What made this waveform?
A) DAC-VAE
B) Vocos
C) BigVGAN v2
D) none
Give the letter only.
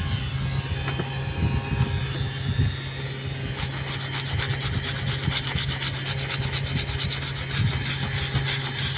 D